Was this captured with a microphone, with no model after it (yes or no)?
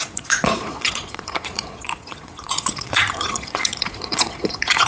no